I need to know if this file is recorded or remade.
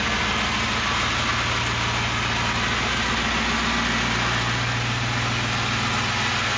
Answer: recorded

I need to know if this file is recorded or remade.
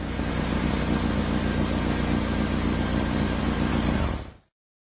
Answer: recorded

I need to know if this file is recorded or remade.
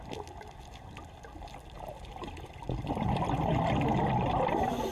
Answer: recorded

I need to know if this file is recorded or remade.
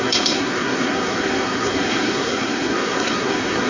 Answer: remade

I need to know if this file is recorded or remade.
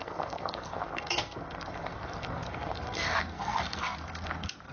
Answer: remade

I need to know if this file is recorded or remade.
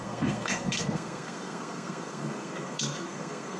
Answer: remade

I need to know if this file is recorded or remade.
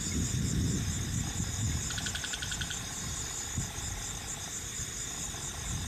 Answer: recorded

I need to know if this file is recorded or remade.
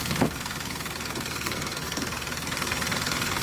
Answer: remade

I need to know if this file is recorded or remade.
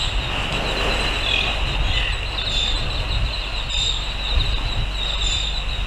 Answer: recorded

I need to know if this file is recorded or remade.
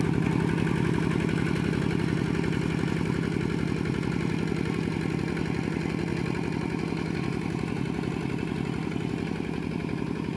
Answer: recorded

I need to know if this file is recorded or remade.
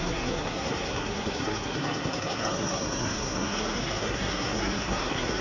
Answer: remade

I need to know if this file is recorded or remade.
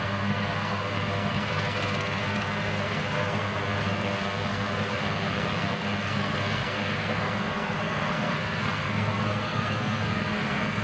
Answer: remade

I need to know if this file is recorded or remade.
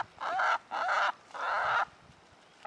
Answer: recorded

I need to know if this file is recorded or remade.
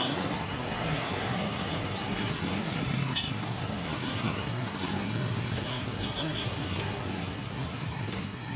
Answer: remade